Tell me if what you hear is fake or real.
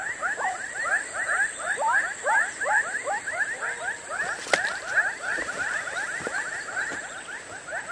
real